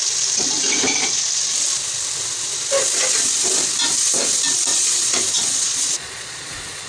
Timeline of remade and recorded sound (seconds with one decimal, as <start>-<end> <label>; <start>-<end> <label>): 0.0-4.7 recorded; 4.7-6.9 remade